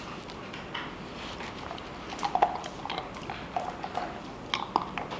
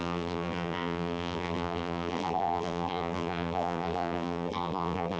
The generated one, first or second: second